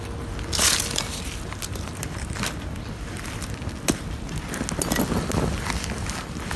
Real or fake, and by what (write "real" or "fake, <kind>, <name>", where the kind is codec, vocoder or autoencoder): real